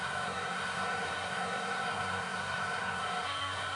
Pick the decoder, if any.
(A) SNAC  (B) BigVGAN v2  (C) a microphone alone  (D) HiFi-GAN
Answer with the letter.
A